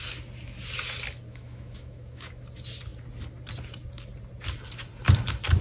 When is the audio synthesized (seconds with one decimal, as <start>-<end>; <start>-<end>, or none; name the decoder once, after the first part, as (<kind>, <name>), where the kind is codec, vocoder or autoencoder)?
1.3-2.4 (autoencoder, DAC-VAE)